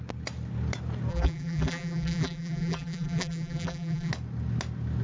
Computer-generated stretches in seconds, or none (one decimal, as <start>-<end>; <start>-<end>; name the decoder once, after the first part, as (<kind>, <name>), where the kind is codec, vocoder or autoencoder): 1.1-4.1 (vocoder, BigVGAN v2)